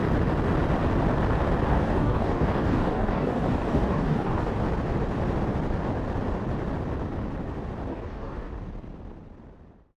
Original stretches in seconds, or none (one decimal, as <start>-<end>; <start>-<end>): 0.0-1.7; 4.5-7.9; 8.5-10.0